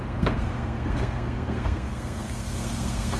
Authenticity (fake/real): fake